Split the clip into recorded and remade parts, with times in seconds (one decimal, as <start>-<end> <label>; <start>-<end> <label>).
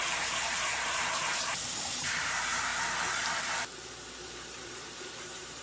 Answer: 0.0-2.7 remade; 2.7-4.2 recorded; 4.2-5.6 remade